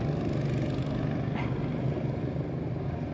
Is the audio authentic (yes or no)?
yes